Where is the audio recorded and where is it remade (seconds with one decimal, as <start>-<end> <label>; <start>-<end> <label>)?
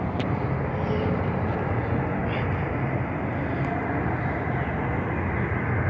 0.0-2.2 remade; 2.2-5.9 recorded